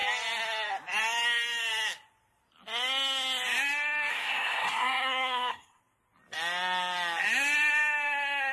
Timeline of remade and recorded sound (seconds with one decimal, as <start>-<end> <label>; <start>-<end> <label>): 0.0-4.1 recorded; 4.1-5.8 remade; 5.8-8.5 recorded